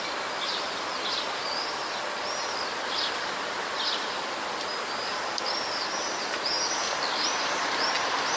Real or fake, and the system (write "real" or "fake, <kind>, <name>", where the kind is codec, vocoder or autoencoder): real